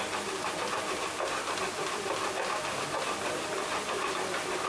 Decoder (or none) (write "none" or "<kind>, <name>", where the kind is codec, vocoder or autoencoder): none